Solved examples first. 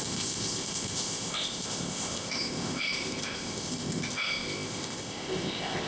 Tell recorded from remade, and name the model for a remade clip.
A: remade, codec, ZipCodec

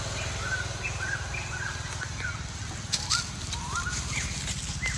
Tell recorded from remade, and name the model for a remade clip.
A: recorded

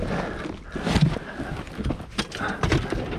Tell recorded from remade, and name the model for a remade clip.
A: recorded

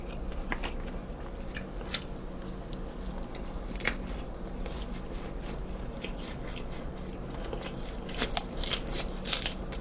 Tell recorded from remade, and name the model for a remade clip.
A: recorded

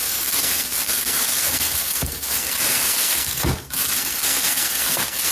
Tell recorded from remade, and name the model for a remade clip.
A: remade, codec, SNAC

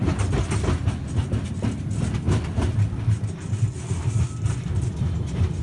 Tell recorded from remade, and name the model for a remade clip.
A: recorded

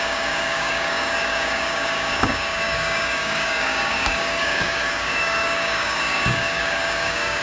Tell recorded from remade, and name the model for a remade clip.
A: remade, codec, DAC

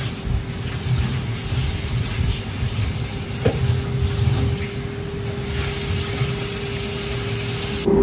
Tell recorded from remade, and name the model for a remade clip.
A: recorded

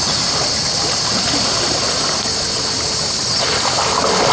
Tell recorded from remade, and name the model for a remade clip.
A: recorded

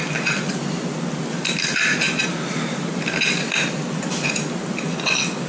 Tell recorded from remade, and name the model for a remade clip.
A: recorded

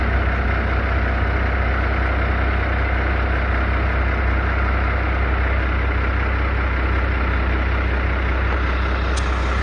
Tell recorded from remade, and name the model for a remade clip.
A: recorded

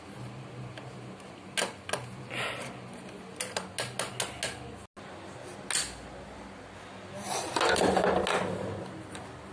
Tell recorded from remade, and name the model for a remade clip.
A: recorded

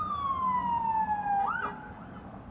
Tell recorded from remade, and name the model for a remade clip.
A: recorded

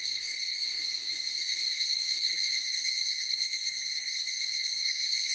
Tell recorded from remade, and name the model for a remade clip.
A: remade, codec, SNAC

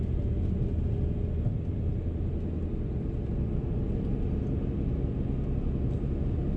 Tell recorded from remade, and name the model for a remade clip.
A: recorded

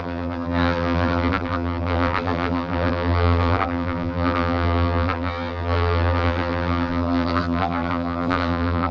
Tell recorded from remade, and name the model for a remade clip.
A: remade, vocoder, BigVGAN v2